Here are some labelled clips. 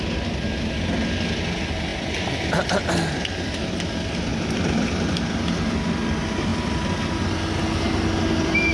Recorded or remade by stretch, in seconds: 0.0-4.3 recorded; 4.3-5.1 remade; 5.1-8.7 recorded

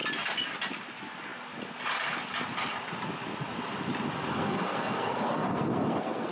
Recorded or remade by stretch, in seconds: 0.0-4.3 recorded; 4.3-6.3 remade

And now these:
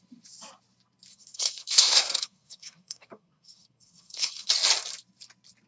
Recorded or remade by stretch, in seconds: 0.0-1.1 recorded; 1.1-4.5 remade; 4.5-5.7 recorded

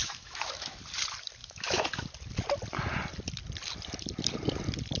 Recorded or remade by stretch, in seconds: 0.0-0.8 remade; 0.8-1.4 recorded; 1.4-1.9 remade; 1.9-5.0 recorded